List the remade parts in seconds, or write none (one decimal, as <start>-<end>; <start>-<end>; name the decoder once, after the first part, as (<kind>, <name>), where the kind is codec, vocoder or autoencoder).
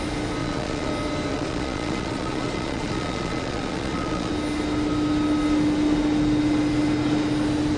0.4-0.9 (vocoder, Vocos); 1.3-4.3